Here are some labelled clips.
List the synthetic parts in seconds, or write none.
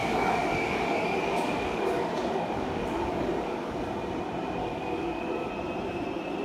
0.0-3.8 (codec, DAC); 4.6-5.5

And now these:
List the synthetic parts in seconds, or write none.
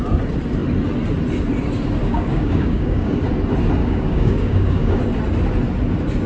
2.0-3.2 (codec, DAC); 3.8-5.0